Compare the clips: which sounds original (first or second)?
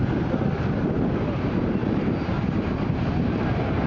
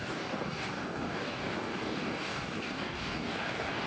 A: first